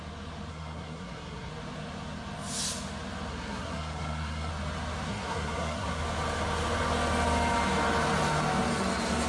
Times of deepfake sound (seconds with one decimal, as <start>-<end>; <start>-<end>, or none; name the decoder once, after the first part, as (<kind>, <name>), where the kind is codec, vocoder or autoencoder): 0.5-1.5 (codec, SNAC); 3.3-4.5; 5.1-6.0